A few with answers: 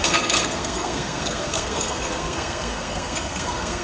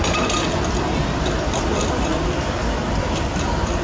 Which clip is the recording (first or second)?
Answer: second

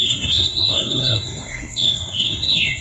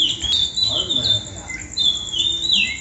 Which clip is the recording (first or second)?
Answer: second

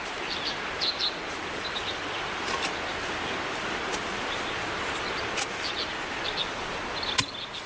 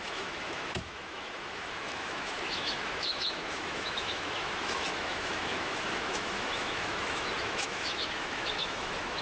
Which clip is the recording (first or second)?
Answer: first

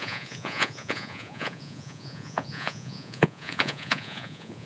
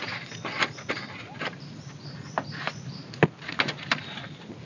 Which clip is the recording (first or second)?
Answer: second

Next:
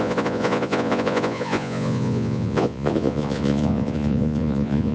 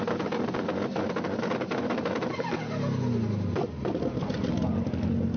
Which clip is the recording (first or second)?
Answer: second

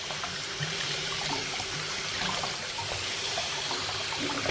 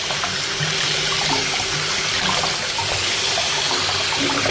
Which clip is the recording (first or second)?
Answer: second